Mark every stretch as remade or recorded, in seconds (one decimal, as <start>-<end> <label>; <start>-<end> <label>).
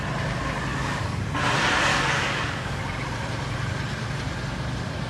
0.0-0.7 recorded; 0.7-1.2 remade; 1.2-1.9 recorded; 1.9-2.8 remade; 2.8-5.1 recorded